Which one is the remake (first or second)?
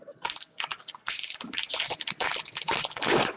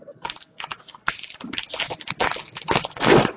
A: first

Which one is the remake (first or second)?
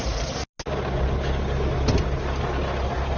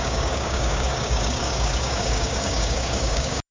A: second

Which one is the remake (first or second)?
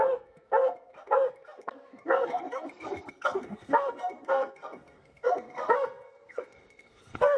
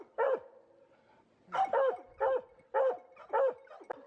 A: first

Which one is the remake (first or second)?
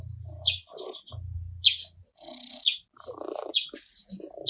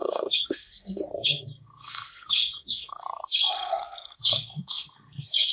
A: second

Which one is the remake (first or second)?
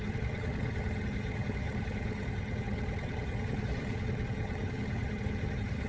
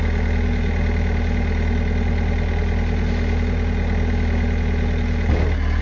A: first